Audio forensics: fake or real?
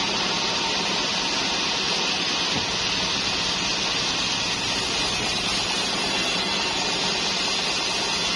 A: real